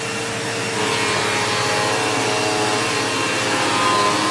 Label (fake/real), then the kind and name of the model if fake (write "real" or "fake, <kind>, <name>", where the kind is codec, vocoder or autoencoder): real